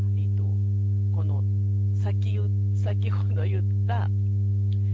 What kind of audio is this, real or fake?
real